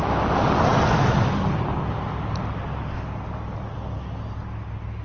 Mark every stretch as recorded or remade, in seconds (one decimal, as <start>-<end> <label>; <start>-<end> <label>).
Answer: 0.0-5.0 recorded